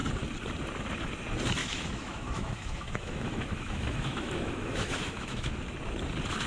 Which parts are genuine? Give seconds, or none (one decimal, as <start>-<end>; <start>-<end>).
0.0-1.6; 5.5-6.5